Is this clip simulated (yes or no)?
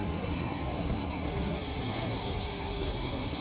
yes